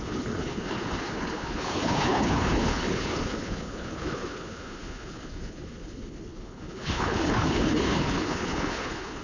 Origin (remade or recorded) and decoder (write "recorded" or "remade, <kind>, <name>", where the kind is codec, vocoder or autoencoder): remade, codec, HILCodec